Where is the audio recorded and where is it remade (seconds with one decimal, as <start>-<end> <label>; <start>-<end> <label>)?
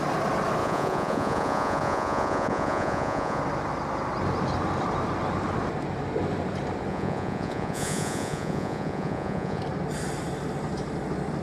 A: 0.0-0.6 recorded; 0.6-3.4 remade; 3.4-6.9 recorded; 6.9-9.6 remade; 9.6-11.4 recorded